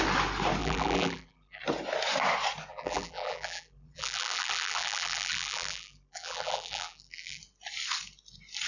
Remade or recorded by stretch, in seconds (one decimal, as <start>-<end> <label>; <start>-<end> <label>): 0.0-0.6 recorded; 0.6-1.6 remade; 1.6-2.7 recorded; 2.7-7.4 remade; 7.4-8.7 recorded